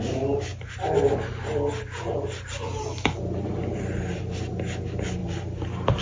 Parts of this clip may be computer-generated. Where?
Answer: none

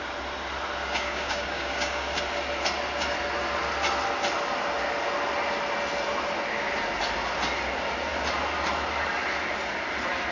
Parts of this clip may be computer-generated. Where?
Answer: 0.8-2.2 (codec, DAC)

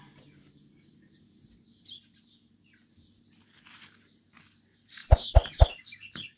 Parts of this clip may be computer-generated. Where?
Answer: 5.0-6.0 (vocoder, BigVGAN v2)

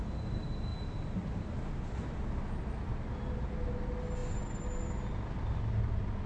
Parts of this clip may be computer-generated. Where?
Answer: none

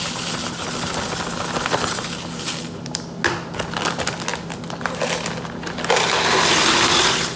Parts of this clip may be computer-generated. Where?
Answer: none